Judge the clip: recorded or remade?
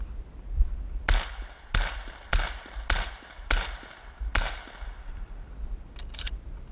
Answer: recorded